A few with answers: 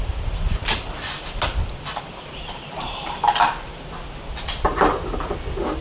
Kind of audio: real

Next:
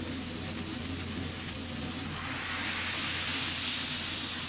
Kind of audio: real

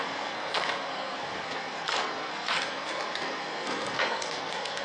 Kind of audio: fake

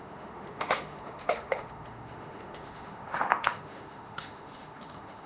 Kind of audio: fake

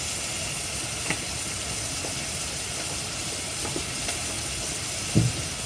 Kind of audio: real